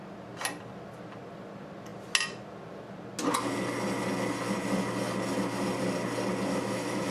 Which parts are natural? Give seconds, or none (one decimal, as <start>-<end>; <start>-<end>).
0.0-6.5